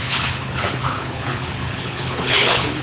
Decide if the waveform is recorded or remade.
remade